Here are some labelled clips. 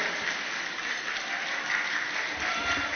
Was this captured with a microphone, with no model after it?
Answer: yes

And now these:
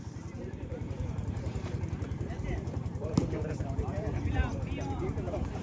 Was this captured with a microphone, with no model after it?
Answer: no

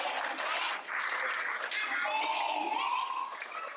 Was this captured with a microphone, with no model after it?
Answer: yes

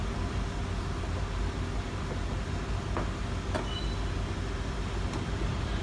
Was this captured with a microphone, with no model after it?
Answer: yes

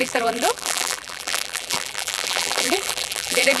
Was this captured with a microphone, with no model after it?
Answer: no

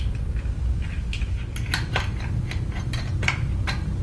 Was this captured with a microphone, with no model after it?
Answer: yes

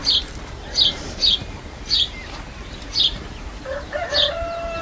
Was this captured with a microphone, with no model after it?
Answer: no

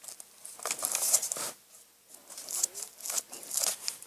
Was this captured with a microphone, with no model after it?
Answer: yes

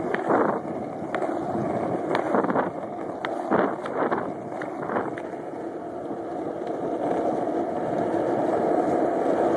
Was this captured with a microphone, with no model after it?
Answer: yes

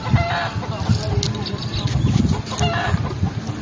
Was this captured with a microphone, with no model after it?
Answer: yes